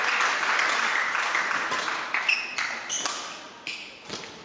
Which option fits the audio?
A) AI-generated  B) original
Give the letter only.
B